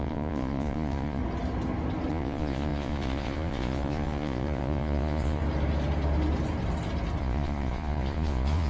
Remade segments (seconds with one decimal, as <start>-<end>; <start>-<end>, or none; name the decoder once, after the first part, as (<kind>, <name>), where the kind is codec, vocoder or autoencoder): 0.0-1.2 (vocoder, Vocos); 2.1-5.4; 7.2-8.7